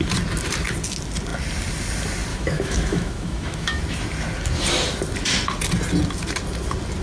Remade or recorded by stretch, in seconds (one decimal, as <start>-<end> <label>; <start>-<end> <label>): 0.0-2.3 recorded; 2.3-3.8 remade; 3.8-7.0 recorded